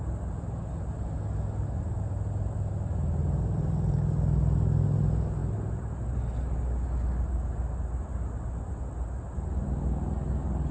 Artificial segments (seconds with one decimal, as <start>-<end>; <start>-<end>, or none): none